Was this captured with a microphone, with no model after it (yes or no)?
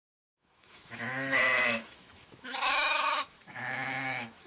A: no